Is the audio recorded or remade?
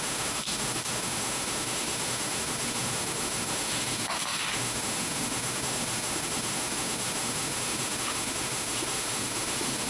remade